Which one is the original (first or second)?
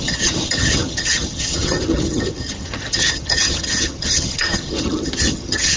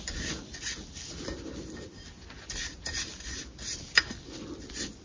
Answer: second